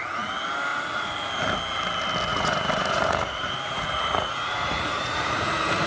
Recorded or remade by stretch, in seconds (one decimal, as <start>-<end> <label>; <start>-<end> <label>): 0.0-0.7 recorded; 0.7-1.3 remade; 1.3-2.3 recorded; 2.3-5.9 remade